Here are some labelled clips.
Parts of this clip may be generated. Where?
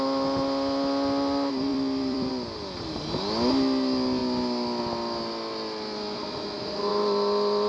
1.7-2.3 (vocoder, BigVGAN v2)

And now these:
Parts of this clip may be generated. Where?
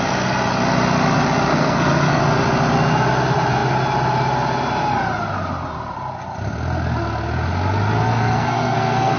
1.5-2.2 (codec, SNAC); 8.1-9.2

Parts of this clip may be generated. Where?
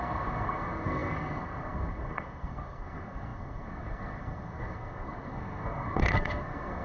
0.0-6.8 (codec, SNAC)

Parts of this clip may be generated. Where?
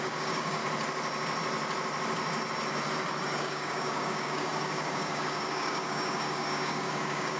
0.0-0.6 (codec, DAC); 3.4-7.4